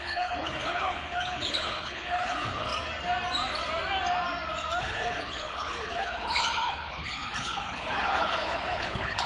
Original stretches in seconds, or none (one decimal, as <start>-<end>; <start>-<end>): 2.7-4.8